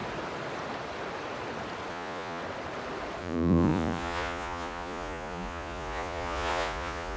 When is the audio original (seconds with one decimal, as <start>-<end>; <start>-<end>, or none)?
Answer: 0.0-1.9; 2.4-3.2